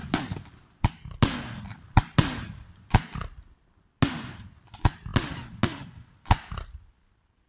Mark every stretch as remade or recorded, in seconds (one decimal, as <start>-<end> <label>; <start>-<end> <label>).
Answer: 0.0-7.5 recorded